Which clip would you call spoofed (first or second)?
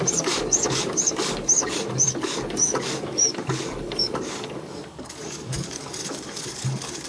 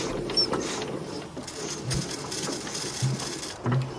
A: first